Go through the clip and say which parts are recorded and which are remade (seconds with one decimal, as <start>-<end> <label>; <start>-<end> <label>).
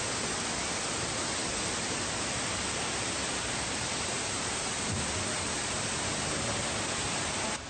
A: 0.0-7.7 recorded